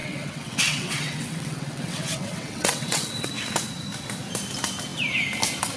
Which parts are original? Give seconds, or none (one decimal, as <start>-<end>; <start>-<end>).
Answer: 3.3-5.8